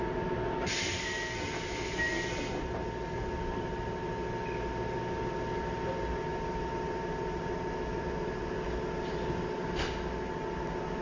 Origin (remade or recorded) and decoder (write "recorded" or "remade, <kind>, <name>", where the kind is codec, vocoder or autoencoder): recorded